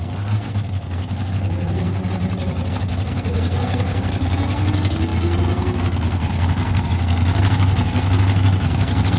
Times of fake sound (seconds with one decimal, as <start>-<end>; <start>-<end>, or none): 0.0-2.0; 2.7-9.2